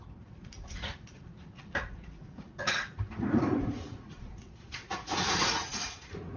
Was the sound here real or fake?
fake